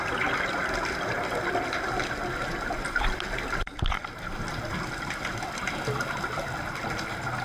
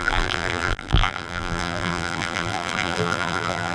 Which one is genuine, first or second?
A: first